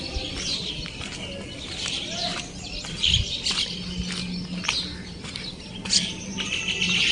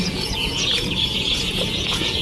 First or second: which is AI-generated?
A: second